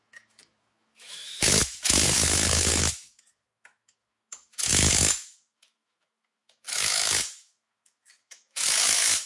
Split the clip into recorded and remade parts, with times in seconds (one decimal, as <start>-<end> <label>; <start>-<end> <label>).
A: 0.0-9.3 remade